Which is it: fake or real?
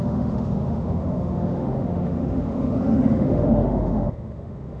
fake